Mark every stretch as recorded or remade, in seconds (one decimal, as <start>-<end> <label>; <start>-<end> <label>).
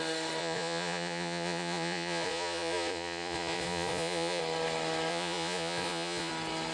0.0-0.4 recorded; 0.4-4.4 remade; 4.4-5.1 recorded; 5.1-6.3 remade; 6.3-6.7 recorded